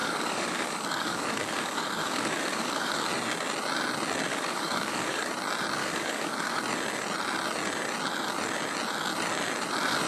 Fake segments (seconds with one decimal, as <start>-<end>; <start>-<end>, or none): 0.0-3.1; 4.3-5.3; 5.8-6.6